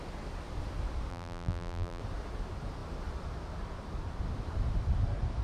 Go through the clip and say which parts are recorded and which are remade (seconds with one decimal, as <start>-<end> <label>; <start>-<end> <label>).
0.0-1.1 recorded; 1.1-2.0 remade; 2.0-5.4 recorded